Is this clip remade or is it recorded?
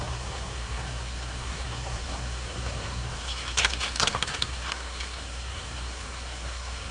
remade